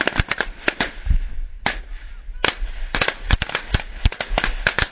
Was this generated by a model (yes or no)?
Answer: no